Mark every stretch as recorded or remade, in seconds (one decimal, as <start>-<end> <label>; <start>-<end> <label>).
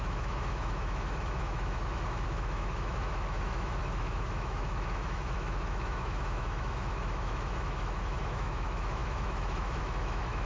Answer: 0.0-10.5 remade